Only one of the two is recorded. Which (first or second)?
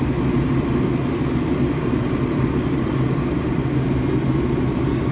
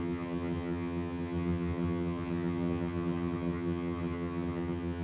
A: first